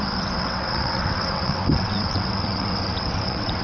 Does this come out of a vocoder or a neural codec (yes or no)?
yes